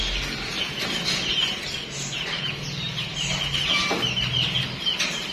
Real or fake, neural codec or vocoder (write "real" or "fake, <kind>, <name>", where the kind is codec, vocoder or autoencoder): real